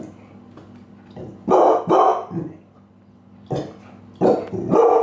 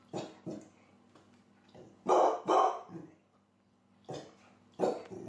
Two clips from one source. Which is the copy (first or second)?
second